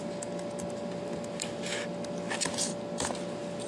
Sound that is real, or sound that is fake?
real